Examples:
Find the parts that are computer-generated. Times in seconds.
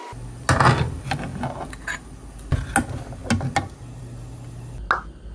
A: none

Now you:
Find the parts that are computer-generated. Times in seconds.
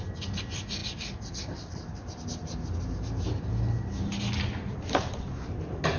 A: none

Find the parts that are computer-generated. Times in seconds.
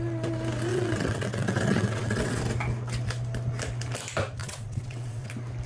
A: 0.7-2.4 (vocoder, WaveNeXt); 4.4-5.3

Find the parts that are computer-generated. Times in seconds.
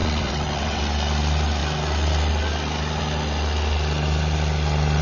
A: 0.0-0.8 (vocoder, WaveNeXt)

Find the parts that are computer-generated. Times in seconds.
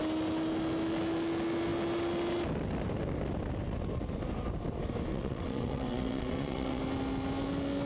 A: 5.1-6.8 (vocoder, WaveNeXt)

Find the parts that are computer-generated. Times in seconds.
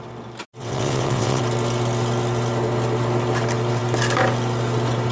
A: 0.6-1.4 (vocoder, WaveNeXt)